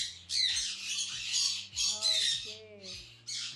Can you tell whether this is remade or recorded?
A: recorded